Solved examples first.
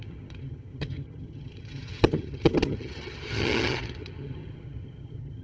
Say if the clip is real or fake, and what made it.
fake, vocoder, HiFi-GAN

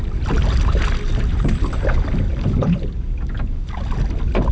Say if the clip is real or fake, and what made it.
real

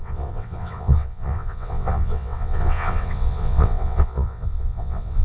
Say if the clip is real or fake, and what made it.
fake, vocoder, WaveNeXt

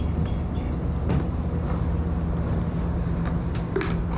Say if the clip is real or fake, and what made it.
real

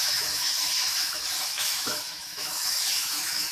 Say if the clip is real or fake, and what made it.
fake, autoencoder, DAC-VAE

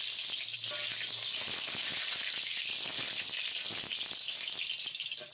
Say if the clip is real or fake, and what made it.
real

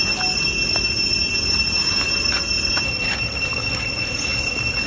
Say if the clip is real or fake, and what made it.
real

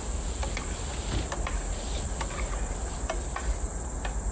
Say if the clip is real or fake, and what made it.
real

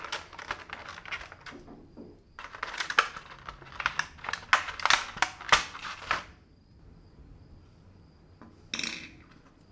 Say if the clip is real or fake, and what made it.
real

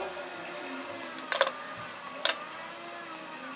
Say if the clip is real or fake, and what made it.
real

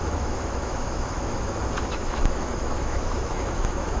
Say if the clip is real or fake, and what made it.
fake, autoencoder, DAC-VAE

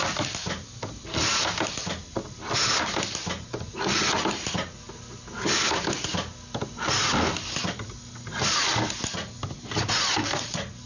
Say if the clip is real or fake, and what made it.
real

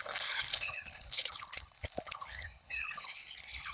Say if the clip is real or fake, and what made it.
fake, codec, HILCodec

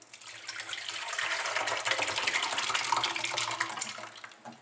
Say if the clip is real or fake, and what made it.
real